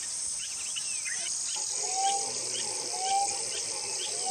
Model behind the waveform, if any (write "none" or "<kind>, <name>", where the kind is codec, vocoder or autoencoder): none